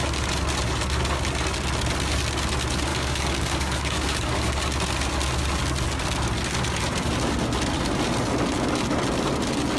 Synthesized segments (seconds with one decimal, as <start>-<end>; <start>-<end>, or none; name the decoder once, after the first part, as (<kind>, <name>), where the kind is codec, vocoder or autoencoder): 2.9-4.6 (codec, DAC)